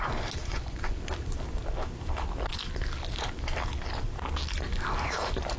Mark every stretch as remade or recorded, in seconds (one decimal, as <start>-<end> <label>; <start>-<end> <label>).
0.0-0.4 recorded; 0.4-1.0 remade; 1.0-5.6 recorded